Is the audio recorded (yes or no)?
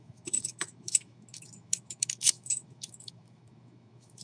no